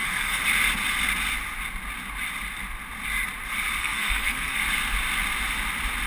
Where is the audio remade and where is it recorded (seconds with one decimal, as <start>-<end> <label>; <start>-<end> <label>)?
0.0-0.4 remade; 0.4-3.8 recorded; 3.8-4.6 remade; 4.6-6.1 recorded